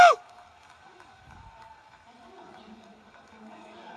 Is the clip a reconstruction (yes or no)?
yes